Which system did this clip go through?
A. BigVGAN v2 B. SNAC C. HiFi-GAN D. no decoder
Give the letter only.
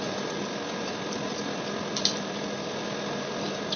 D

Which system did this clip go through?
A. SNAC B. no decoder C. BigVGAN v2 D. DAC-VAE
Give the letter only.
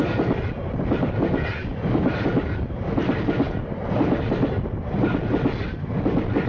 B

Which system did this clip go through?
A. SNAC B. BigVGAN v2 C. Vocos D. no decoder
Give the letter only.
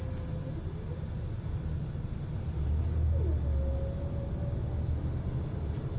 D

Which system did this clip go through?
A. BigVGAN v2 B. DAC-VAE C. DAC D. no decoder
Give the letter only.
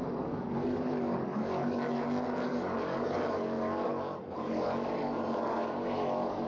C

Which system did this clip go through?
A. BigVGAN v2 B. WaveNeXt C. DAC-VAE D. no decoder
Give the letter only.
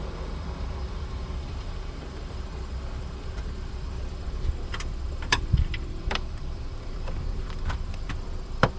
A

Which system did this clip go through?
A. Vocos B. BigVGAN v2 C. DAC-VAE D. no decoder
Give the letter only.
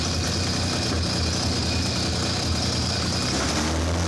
D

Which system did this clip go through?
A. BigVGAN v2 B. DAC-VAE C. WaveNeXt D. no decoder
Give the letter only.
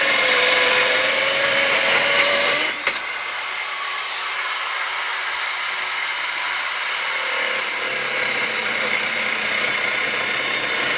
A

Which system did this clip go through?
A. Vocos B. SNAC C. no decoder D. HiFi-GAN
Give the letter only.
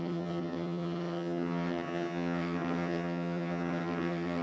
D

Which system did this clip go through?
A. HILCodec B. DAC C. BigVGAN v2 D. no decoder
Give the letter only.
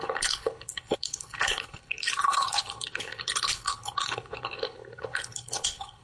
A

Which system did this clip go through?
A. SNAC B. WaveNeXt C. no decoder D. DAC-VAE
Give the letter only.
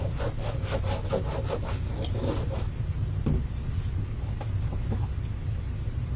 C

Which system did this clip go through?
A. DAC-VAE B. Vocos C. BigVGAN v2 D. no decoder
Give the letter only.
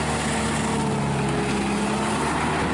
D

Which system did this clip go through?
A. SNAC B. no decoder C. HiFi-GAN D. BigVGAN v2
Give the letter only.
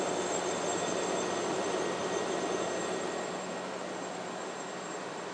B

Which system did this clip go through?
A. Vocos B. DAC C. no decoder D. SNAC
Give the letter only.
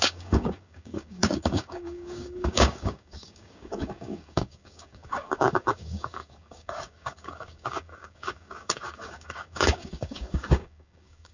B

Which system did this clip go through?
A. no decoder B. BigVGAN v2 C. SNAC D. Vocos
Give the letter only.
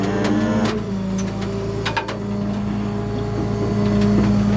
A